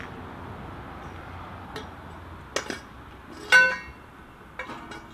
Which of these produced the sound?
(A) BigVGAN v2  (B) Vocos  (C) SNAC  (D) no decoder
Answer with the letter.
D